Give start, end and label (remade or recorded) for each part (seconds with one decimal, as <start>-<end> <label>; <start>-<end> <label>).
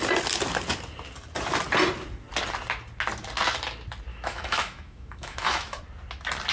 0.0-4.1 recorded; 4.1-5.8 remade; 5.8-6.5 recorded